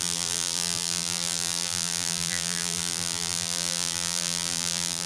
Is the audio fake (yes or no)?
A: yes